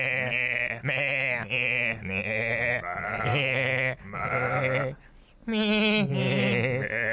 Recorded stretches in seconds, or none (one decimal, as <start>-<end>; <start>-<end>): 0.0-3.3; 4.6-7.1